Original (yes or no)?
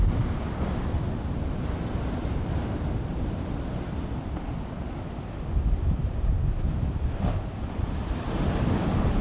no